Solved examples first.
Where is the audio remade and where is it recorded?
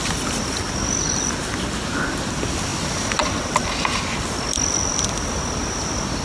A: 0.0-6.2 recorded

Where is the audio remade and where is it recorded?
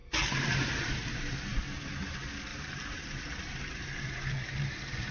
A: 0.0-1.6 remade; 1.6-2.5 recorded; 2.5-5.1 remade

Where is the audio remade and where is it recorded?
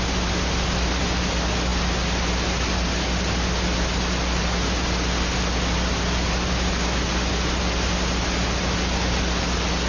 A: 0.0-9.9 recorded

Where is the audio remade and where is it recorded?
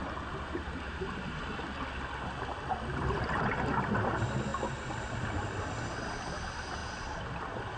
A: 0.0-4.5 recorded; 4.5-5.1 remade; 5.1-7.8 recorded